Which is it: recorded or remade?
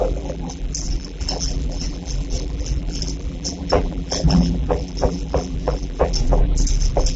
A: remade